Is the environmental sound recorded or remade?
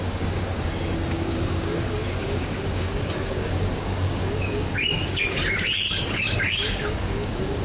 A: remade